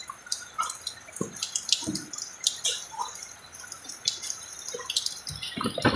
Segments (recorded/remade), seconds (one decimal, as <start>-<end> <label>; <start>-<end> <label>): 0.0-1.4 remade; 1.4-3.0 recorded; 3.0-3.6 remade; 3.6-6.0 recorded